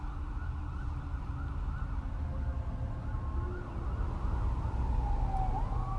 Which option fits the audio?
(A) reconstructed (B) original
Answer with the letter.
B